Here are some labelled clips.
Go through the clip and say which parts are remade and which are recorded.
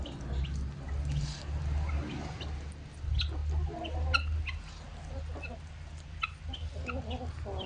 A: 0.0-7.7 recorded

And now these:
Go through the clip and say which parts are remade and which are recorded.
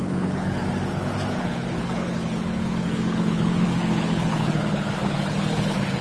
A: 0.0-0.6 remade; 0.6-1.4 recorded; 1.4-6.0 remade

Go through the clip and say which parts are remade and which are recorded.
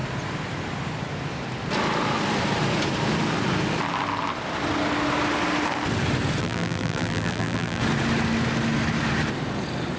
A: 0.0-6.4 recorded; 6.4-7.8 remade; 7.8-10.0 recorded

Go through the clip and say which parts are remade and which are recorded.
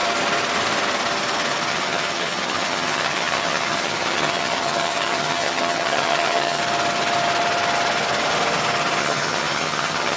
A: 0.0-1.7 recorded; 1.7-6.6 remade; 6.6-9.0 recorded; 9.0-10.2 remade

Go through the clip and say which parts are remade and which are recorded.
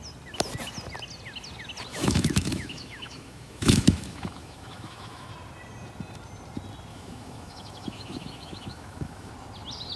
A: 0.0-1.9 recorded; 1.9-5.3 remade; 5.3-6.9 recorded; 6.9-9.3 remade; 9.3-10.0 recorded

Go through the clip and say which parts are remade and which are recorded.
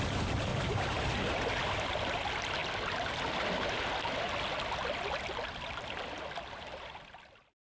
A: 0.0-7.7 recorded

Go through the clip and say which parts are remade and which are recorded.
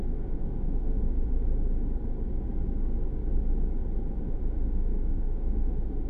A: 0.0-1.0 remade; 1.0-4.2 recorded; 4.2-6.1 remade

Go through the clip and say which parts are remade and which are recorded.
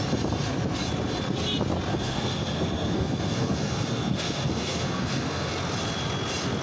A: 0.0-1.9 recorded; 1.9-5.5 remade; 5.5-6.6 recorded